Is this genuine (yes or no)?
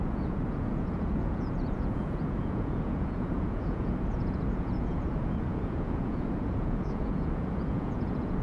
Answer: no